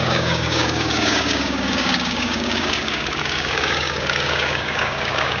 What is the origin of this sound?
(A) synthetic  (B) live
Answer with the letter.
A